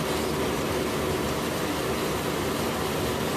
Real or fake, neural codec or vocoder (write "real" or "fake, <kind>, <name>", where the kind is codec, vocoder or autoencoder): real